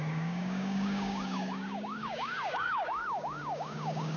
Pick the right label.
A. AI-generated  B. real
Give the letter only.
A